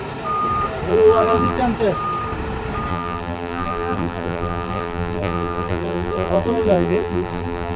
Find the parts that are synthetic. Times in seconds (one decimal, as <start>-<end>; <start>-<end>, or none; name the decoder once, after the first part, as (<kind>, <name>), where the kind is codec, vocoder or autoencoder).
0.9-1.6 (vocoder, BigVGAN v2); 2.9-7.8